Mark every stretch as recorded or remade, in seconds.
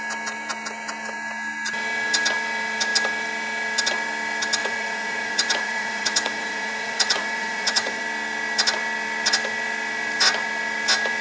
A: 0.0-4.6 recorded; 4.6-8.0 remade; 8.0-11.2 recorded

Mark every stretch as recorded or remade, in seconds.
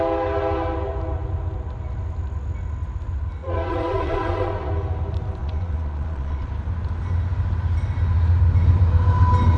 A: 0.0-3.4 recorded; 3.4-4.7 remade; 4.7-5.4 recorded; 5.4-6.5 remade; 6.5-9.6 recorded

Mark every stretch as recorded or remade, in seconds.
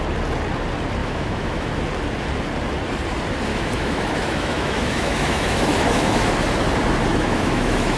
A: 0.0-1.0 recorded; 1.0-1.7 remade; 1.7-3.5 recorded; 3.5-6.3 remade; 6.3-7.1 recorded; 7.1-8.0 remade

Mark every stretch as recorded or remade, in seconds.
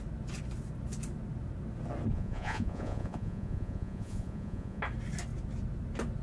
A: 0.0-2.1 recorded; 2.1-4.8 remade; 4.8-6.2 recorded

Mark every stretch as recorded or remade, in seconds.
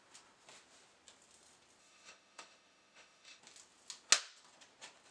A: 0.0-1.8 recorded; 1.8-3.4 remade; 3.4-5.1 recorded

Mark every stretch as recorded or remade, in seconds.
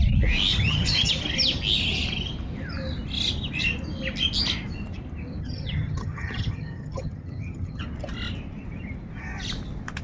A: 0.0-0.5 recorded; 0.5-1.1 remade; 1.1-5.4 recorded; 5.4-7.8 remade; 7.8-10.0 recorded